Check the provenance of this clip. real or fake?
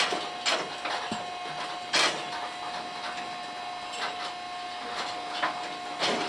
real